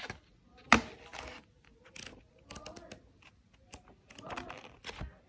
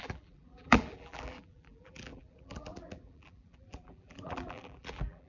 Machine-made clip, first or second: second